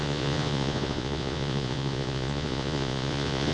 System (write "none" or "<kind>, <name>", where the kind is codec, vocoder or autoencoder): vocoder, Vocos